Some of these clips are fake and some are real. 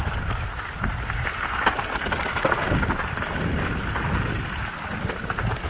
real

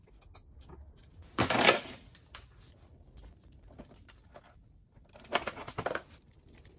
real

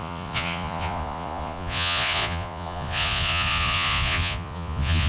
fake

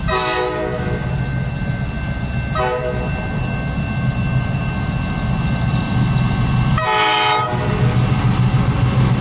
real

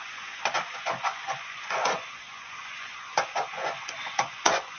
fake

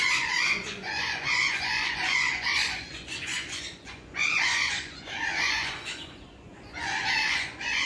fake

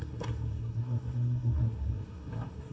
fake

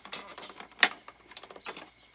fake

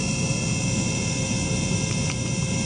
fake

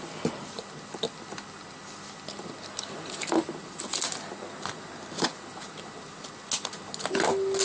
real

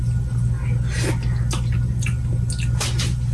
real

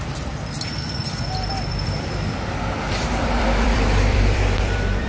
fake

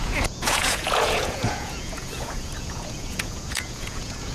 fake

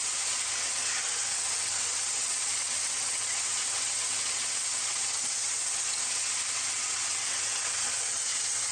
fake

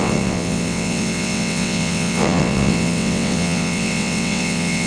fake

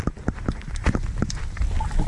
real